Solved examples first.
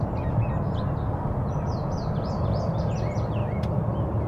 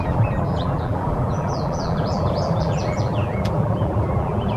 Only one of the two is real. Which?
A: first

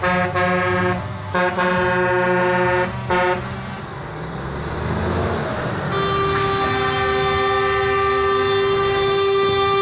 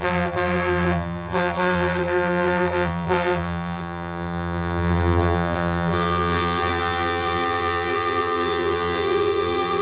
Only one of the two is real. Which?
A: first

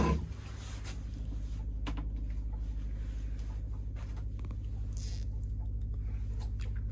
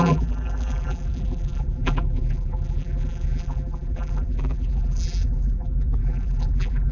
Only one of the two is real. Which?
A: first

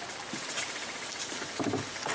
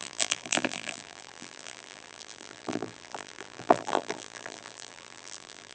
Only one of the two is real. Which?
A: first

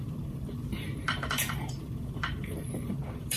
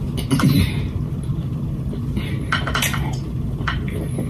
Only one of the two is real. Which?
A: second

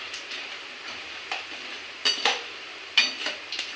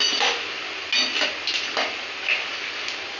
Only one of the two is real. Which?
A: second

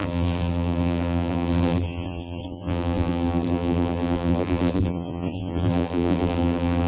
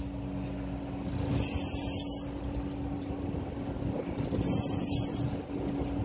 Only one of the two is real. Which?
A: second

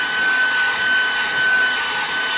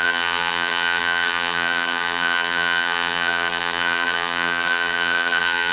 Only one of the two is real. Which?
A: first